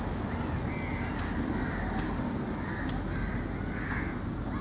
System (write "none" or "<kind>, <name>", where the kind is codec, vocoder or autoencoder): none